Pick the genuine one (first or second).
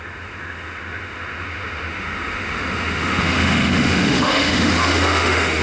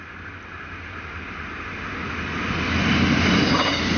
second